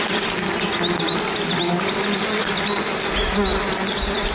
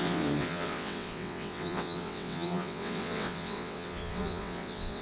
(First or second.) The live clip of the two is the first